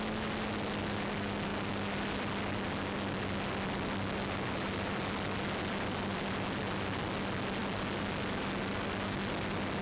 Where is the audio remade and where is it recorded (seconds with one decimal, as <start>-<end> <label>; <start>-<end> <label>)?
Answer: 0.0-9.8 recorded